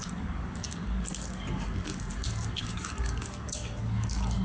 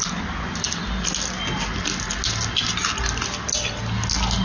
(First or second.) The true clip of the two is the second